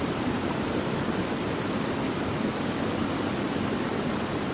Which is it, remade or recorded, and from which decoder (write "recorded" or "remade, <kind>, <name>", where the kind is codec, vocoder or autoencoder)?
recorded